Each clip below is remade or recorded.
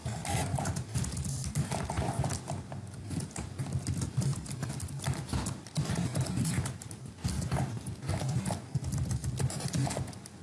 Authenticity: recorded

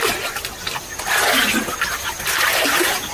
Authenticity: recorded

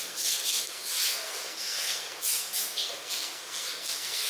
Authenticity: remade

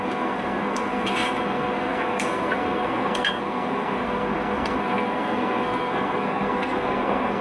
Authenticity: remade